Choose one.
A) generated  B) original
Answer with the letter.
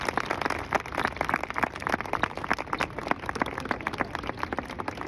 B